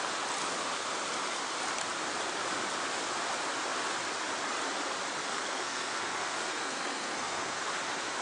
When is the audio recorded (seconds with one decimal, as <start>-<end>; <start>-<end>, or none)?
0.0-5.3; 7.6-8.2